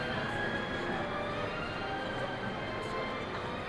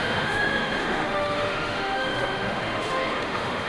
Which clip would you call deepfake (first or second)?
second